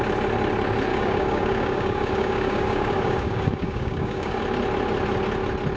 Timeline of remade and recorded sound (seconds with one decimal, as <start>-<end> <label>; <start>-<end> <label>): 0.0-0.9 recorded; 0.9-4.4 remade; 4.4-5.8 recorded